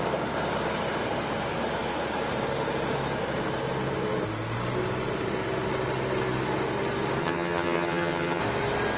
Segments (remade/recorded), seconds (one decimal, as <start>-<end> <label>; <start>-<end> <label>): 0.0-7.2 recorded; 7.2-8.4 remade; 8.4-9.0 recorded